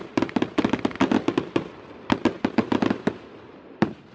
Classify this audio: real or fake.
real